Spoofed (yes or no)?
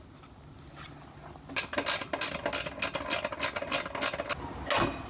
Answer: no